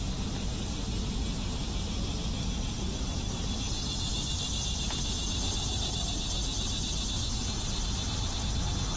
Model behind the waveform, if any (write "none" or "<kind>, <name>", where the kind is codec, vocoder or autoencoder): none